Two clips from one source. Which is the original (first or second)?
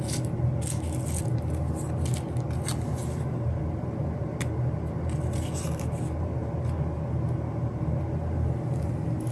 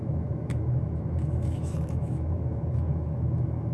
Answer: first